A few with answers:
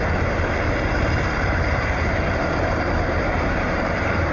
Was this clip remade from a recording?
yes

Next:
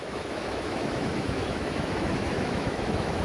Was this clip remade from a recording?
yes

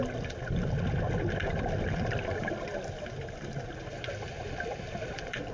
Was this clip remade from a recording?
no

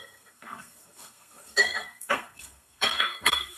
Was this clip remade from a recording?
yes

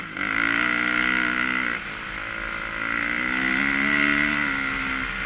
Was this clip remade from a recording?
no